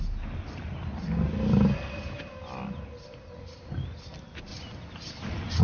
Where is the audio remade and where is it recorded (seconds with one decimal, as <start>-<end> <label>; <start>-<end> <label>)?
0.0-5.6 recorded